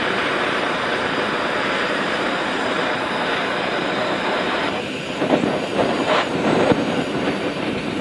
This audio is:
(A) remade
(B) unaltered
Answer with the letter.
A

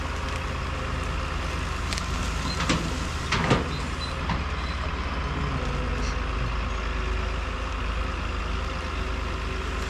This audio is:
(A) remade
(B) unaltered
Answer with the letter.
B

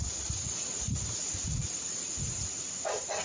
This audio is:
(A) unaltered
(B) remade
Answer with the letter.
B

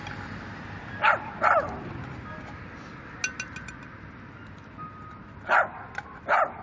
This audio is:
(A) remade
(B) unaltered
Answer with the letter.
B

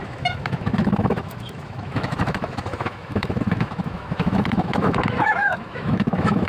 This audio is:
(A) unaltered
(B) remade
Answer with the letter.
B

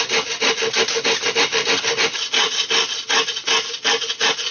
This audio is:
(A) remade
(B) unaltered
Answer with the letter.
B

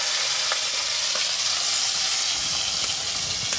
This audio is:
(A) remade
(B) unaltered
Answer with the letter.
B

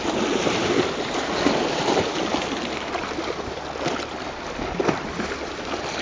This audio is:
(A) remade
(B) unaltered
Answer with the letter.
B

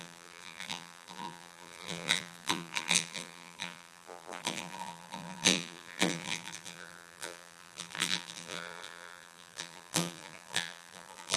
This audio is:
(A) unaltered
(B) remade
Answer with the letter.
B